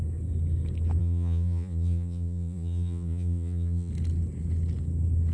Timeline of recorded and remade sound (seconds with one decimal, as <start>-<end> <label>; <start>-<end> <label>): 0.0-1.0 recorded; 1.0-3.9 remade; 3.9-5.3 recorded